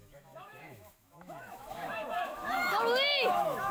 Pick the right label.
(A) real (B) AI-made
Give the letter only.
B